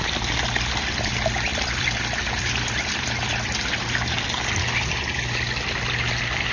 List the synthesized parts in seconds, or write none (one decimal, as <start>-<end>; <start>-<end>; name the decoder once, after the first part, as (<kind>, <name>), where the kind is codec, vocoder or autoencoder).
1.5-4.1 (vocoder, BigVGAN v2)

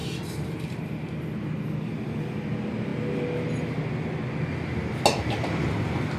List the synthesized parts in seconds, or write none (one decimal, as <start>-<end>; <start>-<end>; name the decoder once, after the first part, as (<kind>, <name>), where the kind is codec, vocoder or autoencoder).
0.0-0.8 (vocoder, BigVGAN v2)